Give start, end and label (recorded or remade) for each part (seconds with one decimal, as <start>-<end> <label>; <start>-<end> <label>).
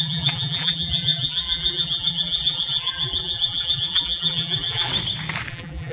0.0-4.9 remade; 4.9-5.5 recorded; 5.5-5.9 remade